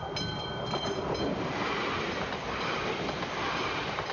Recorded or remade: remade